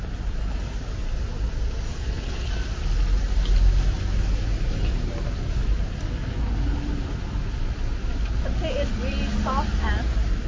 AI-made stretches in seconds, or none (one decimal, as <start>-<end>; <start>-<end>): 1.9-2.5